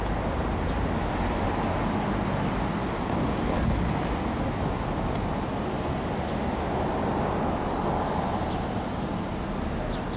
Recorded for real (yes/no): yes